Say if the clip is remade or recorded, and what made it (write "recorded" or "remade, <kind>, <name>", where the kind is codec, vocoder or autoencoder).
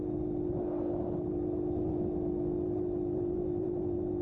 recorded